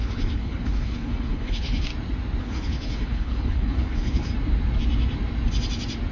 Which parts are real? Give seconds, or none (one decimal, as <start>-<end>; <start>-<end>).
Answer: 1.9-2.4; 4.3-6.1